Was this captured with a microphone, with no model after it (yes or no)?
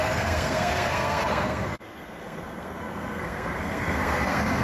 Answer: no